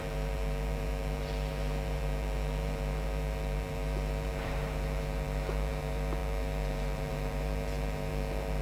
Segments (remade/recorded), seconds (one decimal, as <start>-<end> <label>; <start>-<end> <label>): 0.0-8.6 remade